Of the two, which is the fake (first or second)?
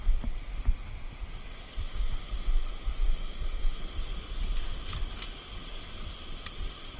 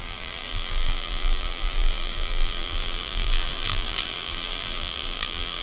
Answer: second